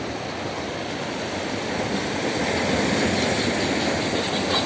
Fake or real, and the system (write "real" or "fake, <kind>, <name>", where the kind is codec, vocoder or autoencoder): real